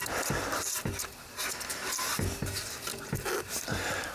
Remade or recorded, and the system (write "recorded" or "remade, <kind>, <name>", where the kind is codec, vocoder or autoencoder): recorded